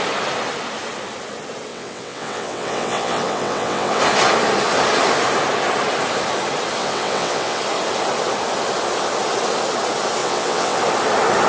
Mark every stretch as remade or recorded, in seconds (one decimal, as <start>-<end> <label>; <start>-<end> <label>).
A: 0.0-1.7 recorded; 1.7-4.0 remade; 4.0-6.8 recorded; 6.8-7.6 remade; 7.6-10.2 recorded; 10.2-10.8 remade; 10.8-11.5 recorded